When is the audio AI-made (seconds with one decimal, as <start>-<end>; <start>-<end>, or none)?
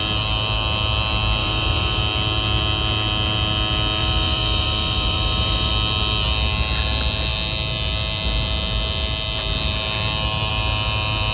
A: 1.4-2.0; 4.0-5.7